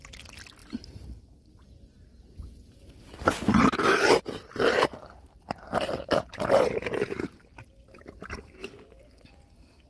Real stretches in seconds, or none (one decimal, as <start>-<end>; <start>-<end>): 0.0-9.9